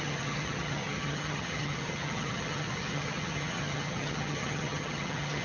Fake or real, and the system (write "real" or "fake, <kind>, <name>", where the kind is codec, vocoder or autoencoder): fake, vocoder, HiFi-GAN